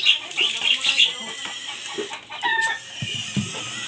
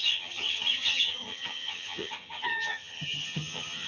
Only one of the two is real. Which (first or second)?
first